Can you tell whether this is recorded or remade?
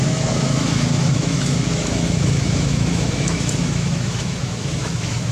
remade